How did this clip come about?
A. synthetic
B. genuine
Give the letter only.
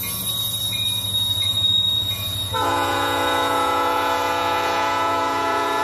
A